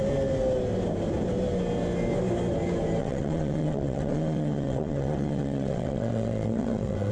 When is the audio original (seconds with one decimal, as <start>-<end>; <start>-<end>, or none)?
0.0-3.0